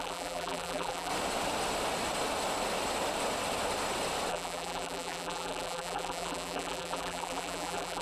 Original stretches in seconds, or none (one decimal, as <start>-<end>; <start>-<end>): 1.1-4.3